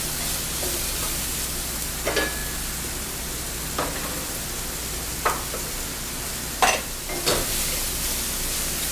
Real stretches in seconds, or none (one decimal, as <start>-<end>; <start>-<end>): 0.0-8.9